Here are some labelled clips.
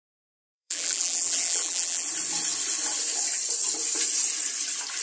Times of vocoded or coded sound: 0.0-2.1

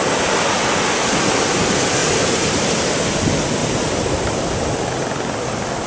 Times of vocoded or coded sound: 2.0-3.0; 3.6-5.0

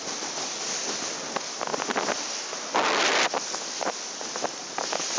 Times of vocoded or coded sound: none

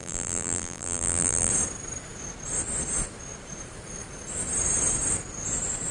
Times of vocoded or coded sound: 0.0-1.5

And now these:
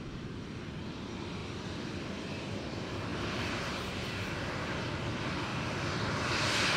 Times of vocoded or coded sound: none

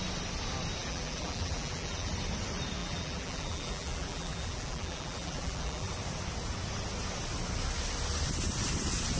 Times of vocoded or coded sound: 0.8-2.1; 2.8-5.9

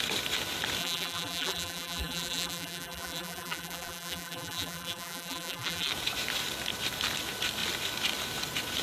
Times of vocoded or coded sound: 0.8-5.9